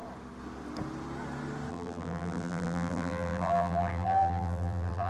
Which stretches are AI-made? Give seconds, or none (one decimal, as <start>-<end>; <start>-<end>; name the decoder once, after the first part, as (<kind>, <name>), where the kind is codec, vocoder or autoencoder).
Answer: 1.7-5.1 (vocoder, BigVGAN v2)